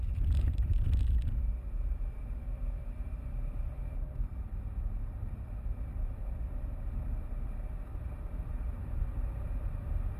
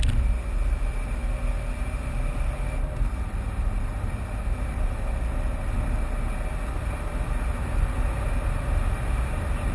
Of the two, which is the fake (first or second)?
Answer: first